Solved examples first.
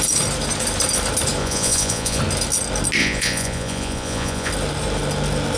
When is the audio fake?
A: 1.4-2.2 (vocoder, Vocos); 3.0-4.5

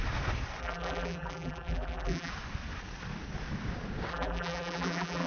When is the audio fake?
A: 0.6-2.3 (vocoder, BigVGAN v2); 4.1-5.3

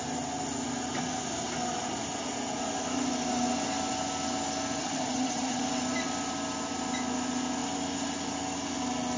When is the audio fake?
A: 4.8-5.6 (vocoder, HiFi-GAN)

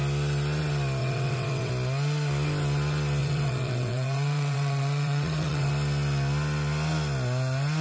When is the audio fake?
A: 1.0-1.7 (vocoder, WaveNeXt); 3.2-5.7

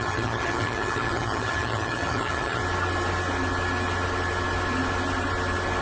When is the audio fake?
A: 0.0-2.6 (vocoder, HiFi-GAN)

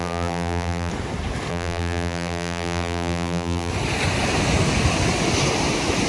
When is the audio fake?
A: 0.0-0.9 (vocoder, BigVGAN v2); 1.5-3.7

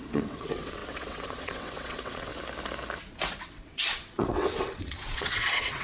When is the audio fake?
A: 0.0-2.3 (vocoder, WaveNeXt); 3.4-5.8